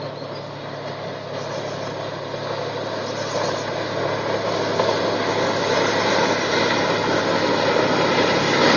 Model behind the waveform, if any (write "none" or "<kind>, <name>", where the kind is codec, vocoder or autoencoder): none